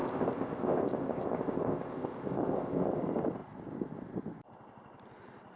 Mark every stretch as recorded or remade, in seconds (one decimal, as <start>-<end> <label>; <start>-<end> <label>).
0.0-3.0 remade; 3.0-5.6 recorded

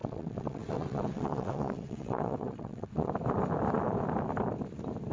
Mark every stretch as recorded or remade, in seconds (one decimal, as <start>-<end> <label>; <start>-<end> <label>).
0.0-3.1 remade; 3.1-5.1 recorded

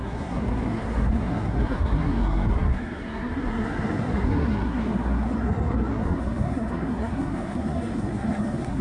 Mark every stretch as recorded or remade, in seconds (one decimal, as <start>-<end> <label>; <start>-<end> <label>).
0.0-8.8 remade

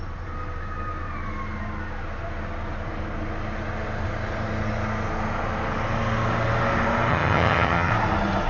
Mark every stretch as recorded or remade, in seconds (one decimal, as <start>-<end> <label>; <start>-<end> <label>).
0.0-7.1 recorded; 7.1-7.9 remade; 7.9-8.5 recorded

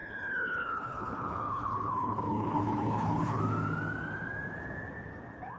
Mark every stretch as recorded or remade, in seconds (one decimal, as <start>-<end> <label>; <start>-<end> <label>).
0.0-3.4 remade; 3.4-5.6 recorded

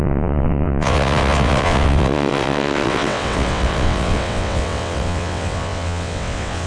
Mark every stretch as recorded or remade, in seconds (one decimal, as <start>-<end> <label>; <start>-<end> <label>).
0.0-6.7 remade

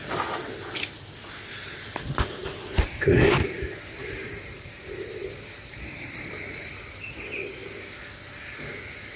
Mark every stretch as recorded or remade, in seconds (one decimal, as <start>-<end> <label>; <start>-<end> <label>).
0.0-2.4 recorded; 2.4-6.7 remade; 6.7-9.2 recorded

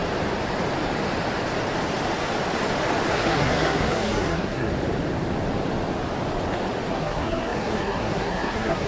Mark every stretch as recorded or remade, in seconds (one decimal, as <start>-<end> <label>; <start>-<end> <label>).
0.0-3.1 recorded; 3.1-4.7 remade; 4.7-6.9 recorded; 6.9-8.9 remade